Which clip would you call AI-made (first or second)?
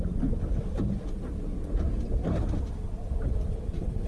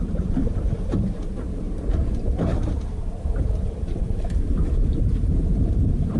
second